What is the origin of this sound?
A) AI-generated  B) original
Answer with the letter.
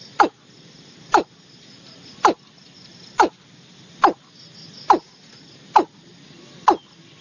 B